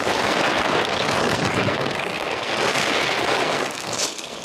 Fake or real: fake